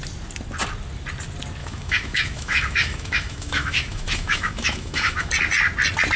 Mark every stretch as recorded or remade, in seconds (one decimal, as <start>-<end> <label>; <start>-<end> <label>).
0.0-1.6 recorded; 1.6-5.3 remade; 5.3-6.2 recorded